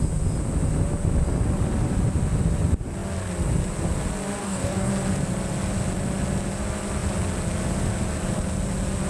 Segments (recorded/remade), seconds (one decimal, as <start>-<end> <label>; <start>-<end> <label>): 0.0-4.4 recorded; 4.4-4.9 remade; 4.9-9.1 recorded